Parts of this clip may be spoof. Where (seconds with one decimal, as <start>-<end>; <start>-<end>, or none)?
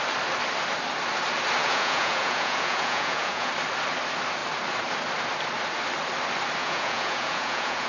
1.6-3.5; 6.6-7.9